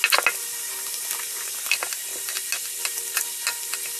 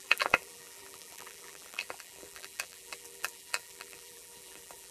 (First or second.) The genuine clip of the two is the first